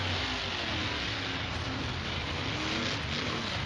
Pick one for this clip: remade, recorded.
recorded